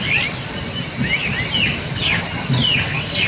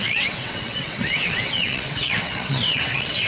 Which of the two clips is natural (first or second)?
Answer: first